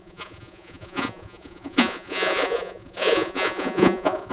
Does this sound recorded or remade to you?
remade